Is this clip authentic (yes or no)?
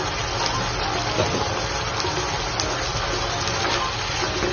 yes